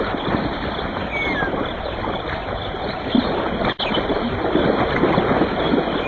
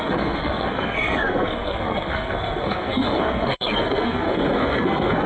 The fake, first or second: second